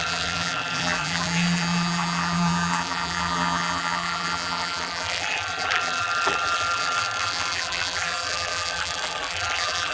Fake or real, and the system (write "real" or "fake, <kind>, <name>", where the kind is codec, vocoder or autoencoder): fake, vocoder, BigVGAN v2